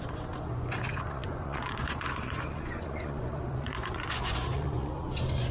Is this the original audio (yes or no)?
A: no